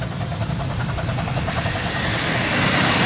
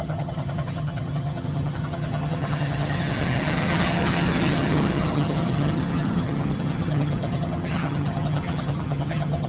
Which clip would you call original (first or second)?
first